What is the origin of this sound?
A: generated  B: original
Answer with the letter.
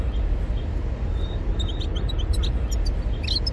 B